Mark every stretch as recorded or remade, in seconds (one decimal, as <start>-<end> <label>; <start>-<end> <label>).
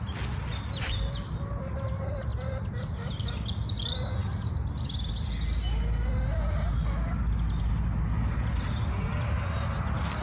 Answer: 0.0-10.2 recorded